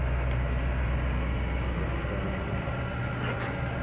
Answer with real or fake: real